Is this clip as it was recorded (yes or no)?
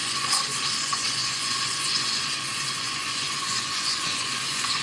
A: no